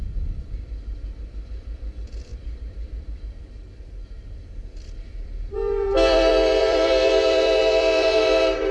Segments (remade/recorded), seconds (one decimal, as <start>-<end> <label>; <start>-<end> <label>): 0.0-8.7 remade